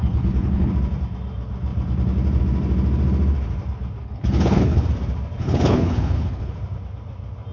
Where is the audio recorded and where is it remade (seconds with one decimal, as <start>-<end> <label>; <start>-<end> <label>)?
0.0-0.7 remade; 0.7-4.0 recorded; 4.0-4.8 remade; 4.8-5.4 recorded; 5.4-6.5 remade; 6.5-7.5 recorded